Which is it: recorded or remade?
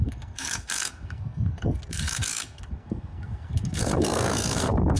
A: remade